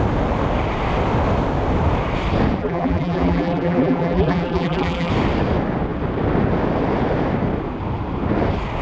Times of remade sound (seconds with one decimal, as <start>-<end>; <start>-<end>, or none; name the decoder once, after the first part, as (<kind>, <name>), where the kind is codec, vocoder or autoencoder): 2.6-5.1 (vocoder, BigVGAN v2)